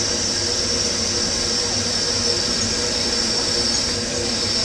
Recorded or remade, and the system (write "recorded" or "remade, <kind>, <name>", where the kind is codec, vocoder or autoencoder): recorded